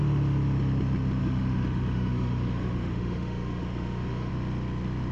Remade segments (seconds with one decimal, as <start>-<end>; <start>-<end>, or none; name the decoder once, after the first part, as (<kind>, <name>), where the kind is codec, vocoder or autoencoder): 1.2-4.3 (autoencoder, DAC-VAE)